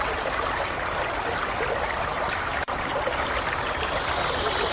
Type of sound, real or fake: real